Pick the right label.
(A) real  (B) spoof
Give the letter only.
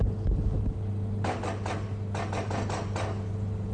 A